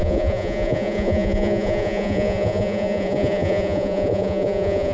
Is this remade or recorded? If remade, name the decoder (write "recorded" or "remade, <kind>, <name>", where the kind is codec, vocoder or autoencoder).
remade, vocoder, Vocos